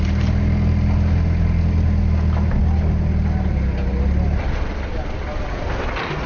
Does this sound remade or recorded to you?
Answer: recorded